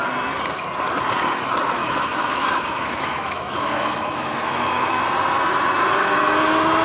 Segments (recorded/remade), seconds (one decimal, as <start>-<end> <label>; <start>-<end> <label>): 0.0-1.8 recorded; 1.8-5.0 remade; 5.0-6.8 recorded